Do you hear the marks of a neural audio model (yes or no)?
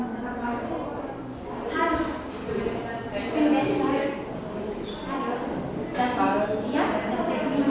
no